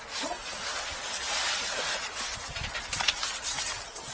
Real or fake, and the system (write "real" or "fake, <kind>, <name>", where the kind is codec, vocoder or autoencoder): real